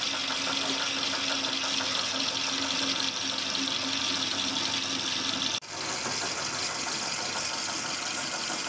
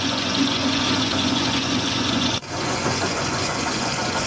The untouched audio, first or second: first